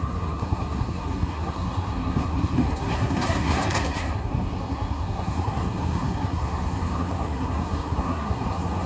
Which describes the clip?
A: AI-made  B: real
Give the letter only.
A